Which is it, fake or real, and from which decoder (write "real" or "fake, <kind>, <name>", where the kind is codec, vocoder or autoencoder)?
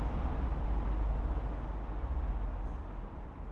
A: real